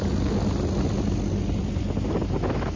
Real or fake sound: real